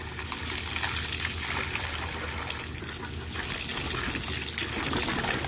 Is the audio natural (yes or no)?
yes